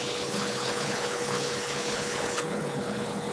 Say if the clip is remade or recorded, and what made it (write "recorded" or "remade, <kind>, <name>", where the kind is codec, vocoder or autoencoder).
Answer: remade, codec, HILCodec